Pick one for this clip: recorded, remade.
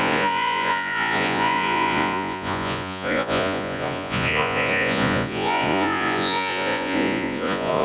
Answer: remade